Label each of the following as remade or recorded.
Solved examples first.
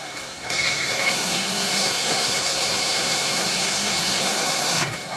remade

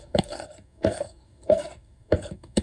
remade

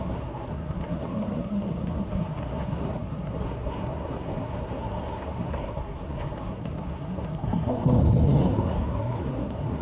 remade